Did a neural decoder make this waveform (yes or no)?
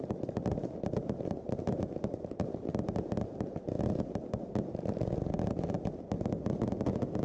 no